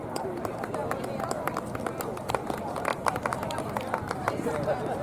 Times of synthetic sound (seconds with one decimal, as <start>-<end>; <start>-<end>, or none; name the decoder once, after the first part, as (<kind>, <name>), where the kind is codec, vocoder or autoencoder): none